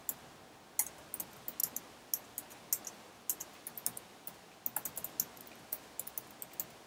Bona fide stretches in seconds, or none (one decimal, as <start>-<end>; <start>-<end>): 0.0-6.9